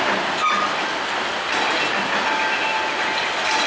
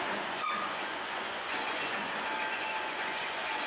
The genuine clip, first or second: first